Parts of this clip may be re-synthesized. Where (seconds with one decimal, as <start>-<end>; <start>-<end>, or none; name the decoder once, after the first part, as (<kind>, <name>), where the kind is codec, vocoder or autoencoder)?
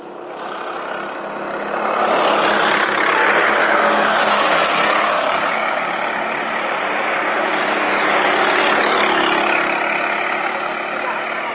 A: 3.6-6.1 (codec, DAC)